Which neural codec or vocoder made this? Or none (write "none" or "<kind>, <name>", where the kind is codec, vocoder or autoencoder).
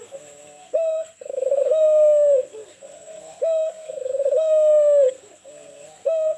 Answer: codec, SNAC